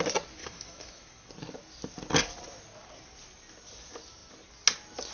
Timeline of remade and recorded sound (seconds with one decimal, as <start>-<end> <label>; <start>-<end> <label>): 0.0-0.4 recorded; 0.4-1.3 remade; 1.3-5.1 recorded